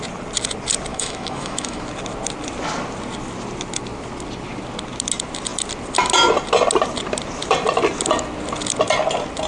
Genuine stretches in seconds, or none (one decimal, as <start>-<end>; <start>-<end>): 0.0-0.9; 1.8-9.5